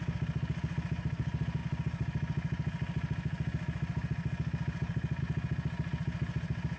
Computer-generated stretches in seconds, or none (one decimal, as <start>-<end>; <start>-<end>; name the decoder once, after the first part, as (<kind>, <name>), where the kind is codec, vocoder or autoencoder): none